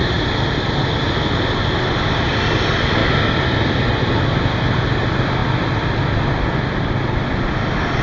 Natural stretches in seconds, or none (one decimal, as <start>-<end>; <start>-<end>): 0.0-8.0